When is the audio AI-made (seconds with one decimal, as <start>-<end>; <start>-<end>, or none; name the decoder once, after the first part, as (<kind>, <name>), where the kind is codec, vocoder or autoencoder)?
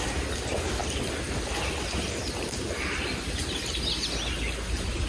none